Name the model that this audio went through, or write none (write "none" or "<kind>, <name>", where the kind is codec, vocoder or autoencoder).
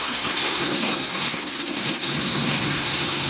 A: codec, SNAC